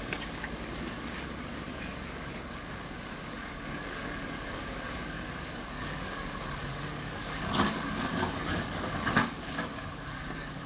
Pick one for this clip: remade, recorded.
remade